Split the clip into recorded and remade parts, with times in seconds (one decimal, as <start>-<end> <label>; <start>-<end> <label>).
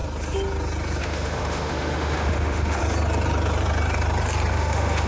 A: 0.0-1.0 recorded; 1.0-2.8 remade; 2.8-4.5 recorded; 4.5-5.1 remade